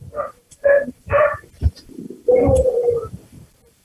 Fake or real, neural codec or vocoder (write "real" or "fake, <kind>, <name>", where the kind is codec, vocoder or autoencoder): fake, vocoder, BigVGAN v2